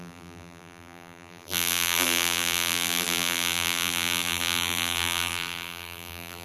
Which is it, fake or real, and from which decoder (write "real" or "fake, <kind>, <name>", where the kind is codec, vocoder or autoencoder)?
fake, vocoder, BigVGAN v2